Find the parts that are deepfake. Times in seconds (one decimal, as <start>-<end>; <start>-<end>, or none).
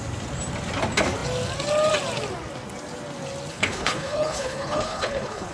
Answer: 3.5-5.5